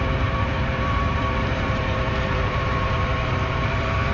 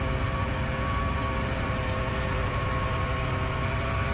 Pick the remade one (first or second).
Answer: first